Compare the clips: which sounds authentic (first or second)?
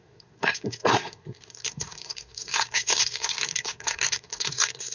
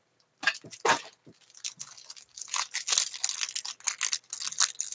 second